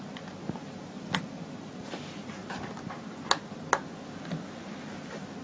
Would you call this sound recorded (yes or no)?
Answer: yes